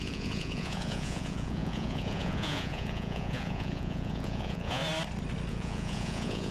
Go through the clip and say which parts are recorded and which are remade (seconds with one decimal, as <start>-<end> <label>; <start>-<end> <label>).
0.0-4.8 remade; 4.8-5.5 recorded; 5.5-6.5 remade